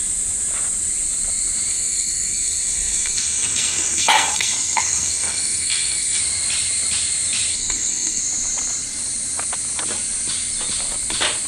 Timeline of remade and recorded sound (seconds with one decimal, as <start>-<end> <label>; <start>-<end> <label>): 0.0-1.7 recorded; 1.7-6.2 remade; 6.2-7.5 recorded; 7.5-8.2 remade; 8.2-11.5 recorded